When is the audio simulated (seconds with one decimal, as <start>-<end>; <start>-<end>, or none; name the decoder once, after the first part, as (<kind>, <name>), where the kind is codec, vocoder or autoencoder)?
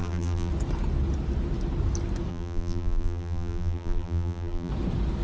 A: 0.0-0.5 (vocoder, BigVGAN v2); 2.3-4.7